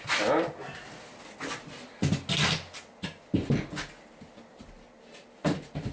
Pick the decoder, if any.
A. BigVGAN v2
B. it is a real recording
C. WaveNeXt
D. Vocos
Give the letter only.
B